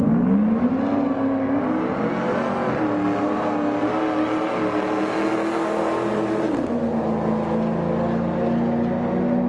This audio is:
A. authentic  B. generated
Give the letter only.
A